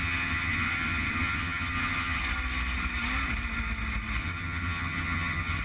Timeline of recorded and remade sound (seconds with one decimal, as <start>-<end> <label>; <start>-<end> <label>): 0.0-2.2 remade; 2.2-4.2 recorded; 4.2-5.6 remade